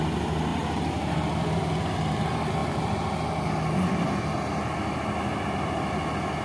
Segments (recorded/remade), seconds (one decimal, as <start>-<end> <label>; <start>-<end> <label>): 0.0-6.4 recorded